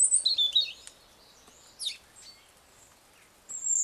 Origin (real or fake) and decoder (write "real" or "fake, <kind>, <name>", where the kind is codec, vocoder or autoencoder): real